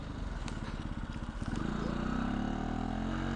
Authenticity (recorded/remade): recorded